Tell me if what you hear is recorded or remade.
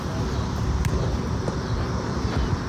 remade